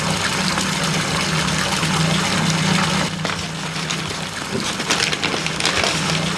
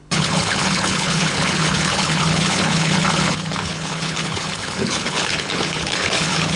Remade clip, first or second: second